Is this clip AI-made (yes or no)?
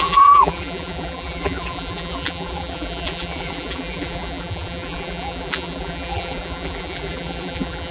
yes